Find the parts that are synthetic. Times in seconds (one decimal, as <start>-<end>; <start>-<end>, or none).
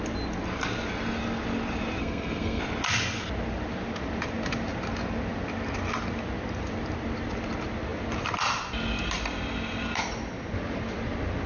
2.0-2.6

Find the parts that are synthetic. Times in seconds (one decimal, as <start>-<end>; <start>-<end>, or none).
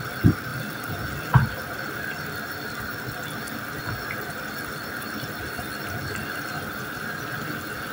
none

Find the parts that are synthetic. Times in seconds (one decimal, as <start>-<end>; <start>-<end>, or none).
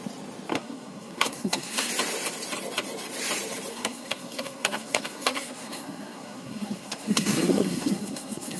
0.5-1.9; 3.7-8.6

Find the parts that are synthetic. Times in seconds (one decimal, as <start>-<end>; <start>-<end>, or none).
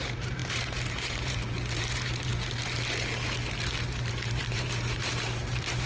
0.0-2.3; 3.8-5.9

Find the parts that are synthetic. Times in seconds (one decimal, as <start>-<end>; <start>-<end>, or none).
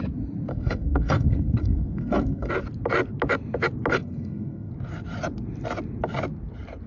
0.5-2.5; 3.9-4.7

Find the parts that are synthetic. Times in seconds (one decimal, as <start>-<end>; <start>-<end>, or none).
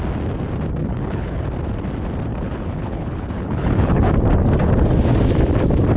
0.8-1.4; 2.3-4.1